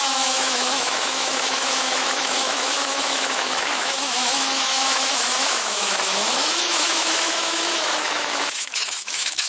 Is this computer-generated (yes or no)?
yes